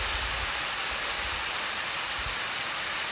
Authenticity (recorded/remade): recorded